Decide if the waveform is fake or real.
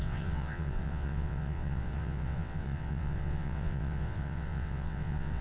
fake